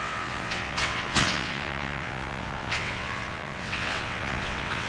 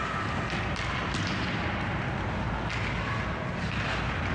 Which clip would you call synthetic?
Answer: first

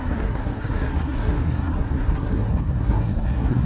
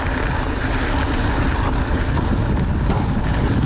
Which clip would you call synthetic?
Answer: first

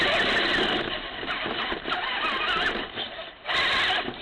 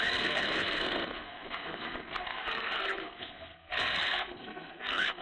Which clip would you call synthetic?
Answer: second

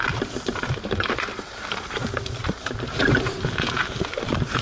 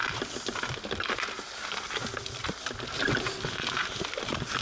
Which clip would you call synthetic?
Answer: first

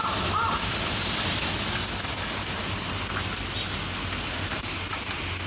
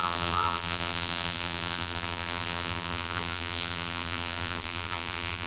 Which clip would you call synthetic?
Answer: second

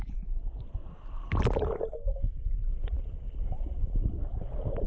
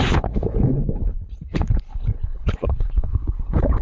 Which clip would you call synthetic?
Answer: second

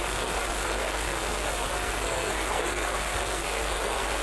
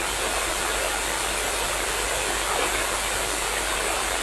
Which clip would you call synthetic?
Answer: first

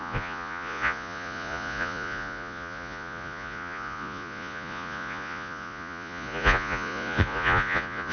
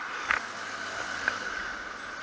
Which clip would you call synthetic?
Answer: first